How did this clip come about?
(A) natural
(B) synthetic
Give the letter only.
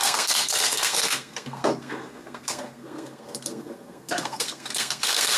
B